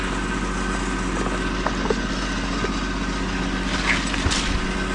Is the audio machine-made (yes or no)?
no